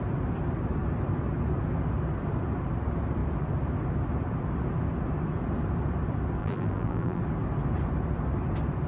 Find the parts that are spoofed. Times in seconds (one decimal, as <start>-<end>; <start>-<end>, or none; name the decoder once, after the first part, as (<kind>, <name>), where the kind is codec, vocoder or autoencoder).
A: 6.4-7.2 (vocoder, BigVGAN v2)